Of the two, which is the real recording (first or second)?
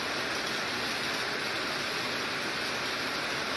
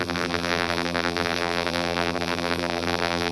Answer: first